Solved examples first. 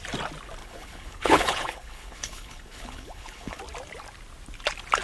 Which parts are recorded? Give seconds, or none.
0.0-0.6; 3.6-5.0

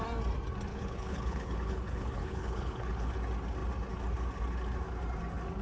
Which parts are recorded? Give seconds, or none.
0.0-0.7; 3.1-5.6

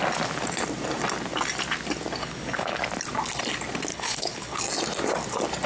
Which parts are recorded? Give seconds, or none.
0.0-2.2; 2.8-3.9; 4.6-5.7

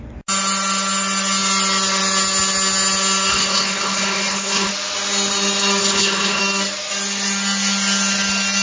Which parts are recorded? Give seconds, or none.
0.0-3.3; 4.7-5.8; 6.4-8.6

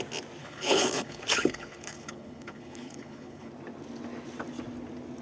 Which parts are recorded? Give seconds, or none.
0.0-0.4; 3.5-5.2

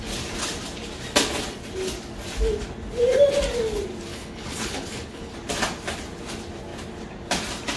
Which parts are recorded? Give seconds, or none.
0.0-4.1; 5.3-7.8

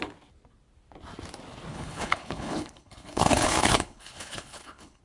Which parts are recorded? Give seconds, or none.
0.0-1.7